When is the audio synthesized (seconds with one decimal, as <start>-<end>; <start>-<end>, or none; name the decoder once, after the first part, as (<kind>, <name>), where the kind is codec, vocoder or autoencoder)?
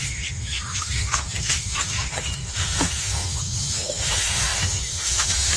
0.0-5.6 (autoencoder, DAC-VAE)